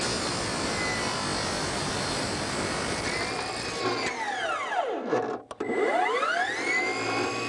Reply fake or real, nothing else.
real